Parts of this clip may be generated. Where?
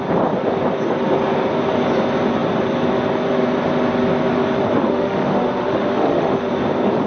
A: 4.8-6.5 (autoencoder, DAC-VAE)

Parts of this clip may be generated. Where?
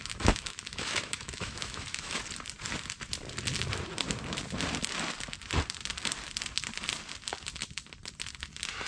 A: 0.0-2.2 (autoencoder, DAC-VAE)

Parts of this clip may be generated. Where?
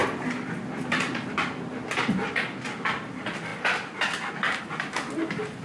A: none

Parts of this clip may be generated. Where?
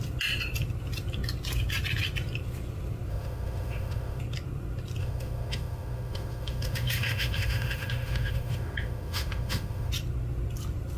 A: 3.1-4.2 (autoencoder, DAC-VAE); 5.0-9.9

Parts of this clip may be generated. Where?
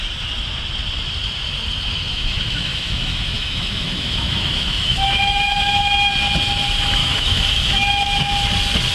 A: 2.1-6.1 (autoencoder, DAC-VAE); 7.0-8.2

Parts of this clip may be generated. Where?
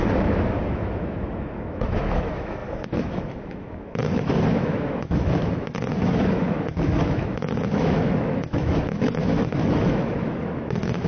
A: 0.0-11.1 (autoencoder, DAC-VAE)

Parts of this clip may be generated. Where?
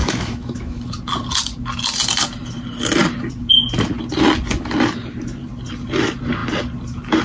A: 0.0-0.8 (autoencoder, DAC-VAE)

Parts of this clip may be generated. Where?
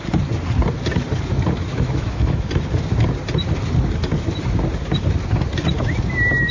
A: 1.7-2.5 (autoencoder, DAC-VAE)